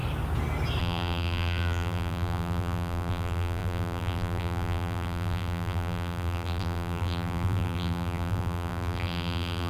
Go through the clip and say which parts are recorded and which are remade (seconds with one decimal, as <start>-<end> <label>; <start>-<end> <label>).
0.0-0.8 recorded; 0.8-9.7 remade